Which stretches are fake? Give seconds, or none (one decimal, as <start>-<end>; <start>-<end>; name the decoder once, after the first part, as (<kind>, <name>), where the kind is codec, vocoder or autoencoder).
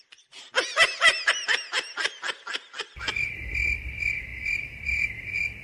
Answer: none